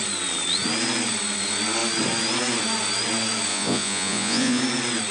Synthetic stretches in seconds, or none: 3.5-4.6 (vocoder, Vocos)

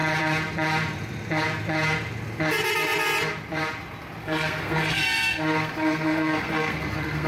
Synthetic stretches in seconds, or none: 4.2-7.3 (codec, SNAC)

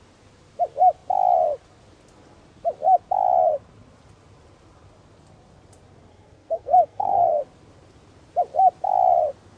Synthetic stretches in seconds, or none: 6.1-7.4 (codec, SNAC)

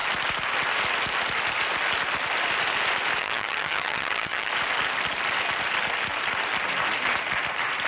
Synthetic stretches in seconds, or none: 3.2-4.5 (vocoder, HiFi-GAN)

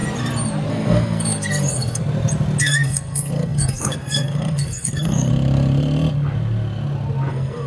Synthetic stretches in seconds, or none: 0.7-2.0 (codec, SNAC); 2.6-5.3; 7.3-7.7

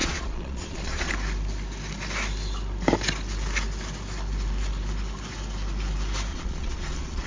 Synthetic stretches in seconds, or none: 0.0-1.1 (vocoder, Vocos); 6.3-7.3

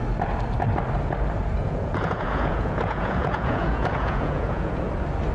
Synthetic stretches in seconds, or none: 1.6-4.8 (vocoder, Vocos)

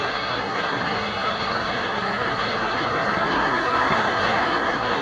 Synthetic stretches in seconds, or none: 0.0-5.0 (codec, SNAC)